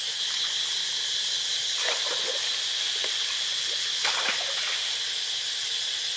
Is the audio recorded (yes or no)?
yes